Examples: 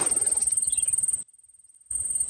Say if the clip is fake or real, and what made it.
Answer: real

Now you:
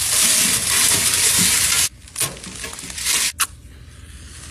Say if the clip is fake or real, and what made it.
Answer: real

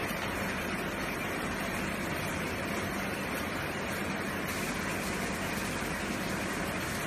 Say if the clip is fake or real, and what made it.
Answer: real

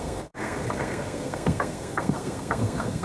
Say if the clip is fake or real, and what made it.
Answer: fake, codec, SNAC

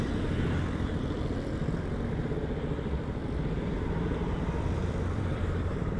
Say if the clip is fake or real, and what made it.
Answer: fake, vocoder, BigVGAN v2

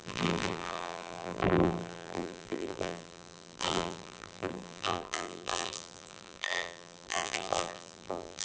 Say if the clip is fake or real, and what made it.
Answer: fake, vocoder, BigVGAN v2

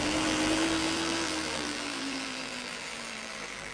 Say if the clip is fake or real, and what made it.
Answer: fake, vocoder, BigVGAN v2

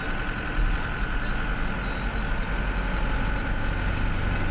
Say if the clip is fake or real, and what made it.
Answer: real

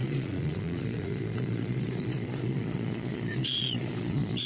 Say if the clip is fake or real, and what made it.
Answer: fake, vocoder, Vocos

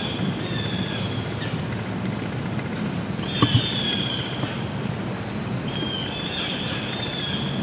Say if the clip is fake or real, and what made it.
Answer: real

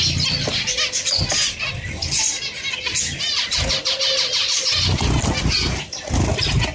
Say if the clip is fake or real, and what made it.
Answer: real